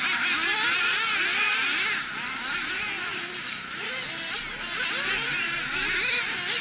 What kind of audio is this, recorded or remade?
recorded